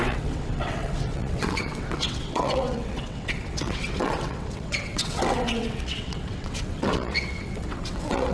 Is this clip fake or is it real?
fake